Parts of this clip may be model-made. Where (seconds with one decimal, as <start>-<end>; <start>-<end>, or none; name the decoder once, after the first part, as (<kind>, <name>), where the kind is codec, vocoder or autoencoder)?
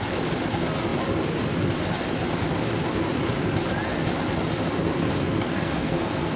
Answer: 5.4-6.4 (codec, SNAC)